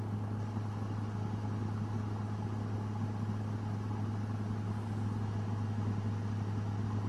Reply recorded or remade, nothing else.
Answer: recorded